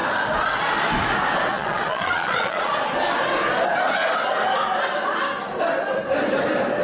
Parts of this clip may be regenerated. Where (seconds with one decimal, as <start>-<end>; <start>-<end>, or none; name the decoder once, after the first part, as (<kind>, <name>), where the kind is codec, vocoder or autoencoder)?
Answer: 1.5-2.7 (vocoder, Vocos)